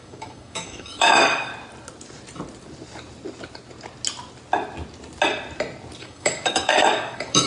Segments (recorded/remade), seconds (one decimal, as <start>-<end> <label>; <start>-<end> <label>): 0.0-1.5 remade; 1.5-6.0 recorded; 6.0-7.5 remade